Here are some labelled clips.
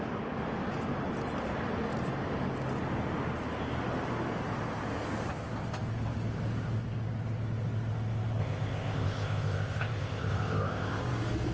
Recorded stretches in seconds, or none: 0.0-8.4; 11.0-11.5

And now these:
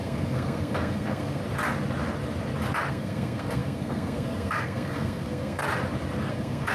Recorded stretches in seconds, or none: 1.4-2.9; 5.6-6.3

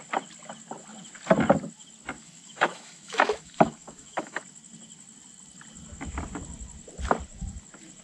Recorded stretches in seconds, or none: 0.0-2.2; 4.4-8.0

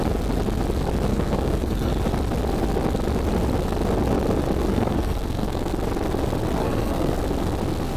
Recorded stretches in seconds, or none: 0.0-1.1; 1.9-4.7; 5.7-6.6; 7.2-8.0

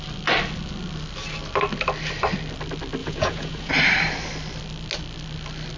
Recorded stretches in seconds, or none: 0.0-3.0; 3.7-5.8